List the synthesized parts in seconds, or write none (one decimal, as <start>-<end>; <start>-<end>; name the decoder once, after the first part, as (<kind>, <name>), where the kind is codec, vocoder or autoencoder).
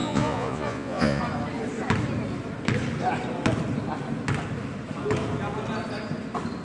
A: 0.0-1.2 (vocoder, Vocos)